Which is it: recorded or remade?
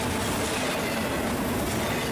recorded